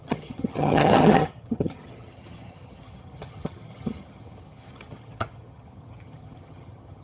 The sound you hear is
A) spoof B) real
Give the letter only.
A